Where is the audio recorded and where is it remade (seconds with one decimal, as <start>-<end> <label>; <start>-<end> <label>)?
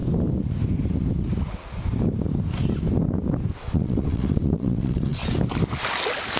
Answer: 0.0-3.6 recorded; 3.6-5.2 remade; 5.2-6.4 recorded